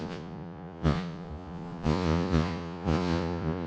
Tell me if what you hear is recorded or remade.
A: remade